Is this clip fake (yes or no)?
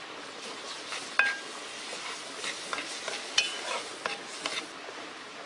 no